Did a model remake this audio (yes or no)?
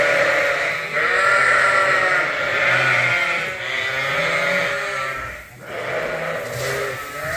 no